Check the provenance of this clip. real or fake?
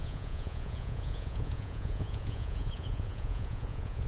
fake